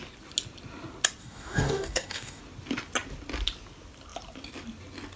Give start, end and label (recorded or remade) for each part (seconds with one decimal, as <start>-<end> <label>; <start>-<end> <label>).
0.0-1.2 recorded; 1.2-2.4 remade; 2.4-5.2 recorded